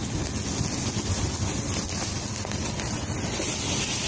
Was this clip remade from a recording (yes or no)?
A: no